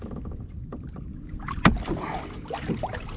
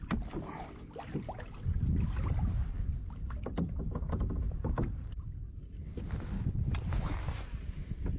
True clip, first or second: second